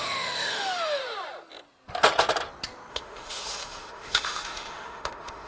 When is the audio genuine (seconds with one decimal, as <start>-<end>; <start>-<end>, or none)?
1.0-2.9